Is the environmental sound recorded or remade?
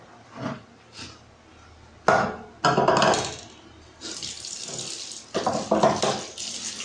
recorded